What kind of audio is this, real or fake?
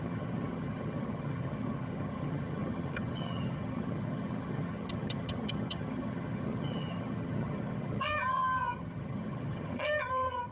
fake